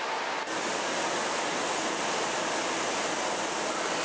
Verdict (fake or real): real